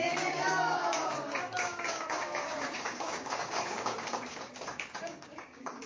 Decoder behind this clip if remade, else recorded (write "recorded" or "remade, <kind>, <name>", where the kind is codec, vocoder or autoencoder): remade, codec, DAC